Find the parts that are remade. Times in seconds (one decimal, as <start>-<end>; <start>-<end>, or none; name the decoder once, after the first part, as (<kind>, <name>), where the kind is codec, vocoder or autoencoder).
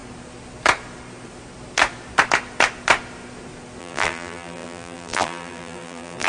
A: 3.8-6.3 (vocoder, BigVGAN v2)